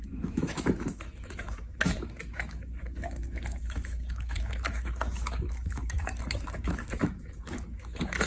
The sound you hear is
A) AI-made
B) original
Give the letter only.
A